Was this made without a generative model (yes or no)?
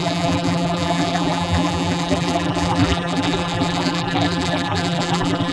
no